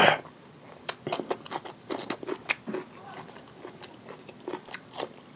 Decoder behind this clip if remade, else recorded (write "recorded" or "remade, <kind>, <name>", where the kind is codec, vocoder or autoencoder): remade, vocoder, BigVGAN v2